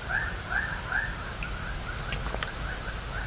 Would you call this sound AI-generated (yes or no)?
no